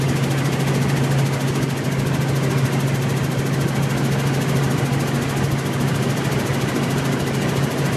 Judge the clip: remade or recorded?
recorded